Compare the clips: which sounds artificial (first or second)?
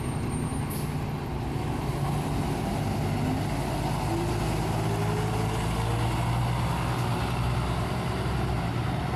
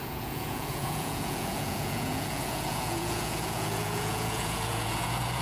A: second